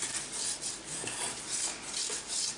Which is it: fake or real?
real